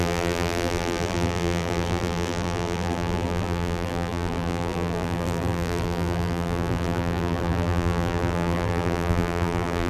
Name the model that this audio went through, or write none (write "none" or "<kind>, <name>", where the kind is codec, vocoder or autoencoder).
vocoder, BigVGAN v2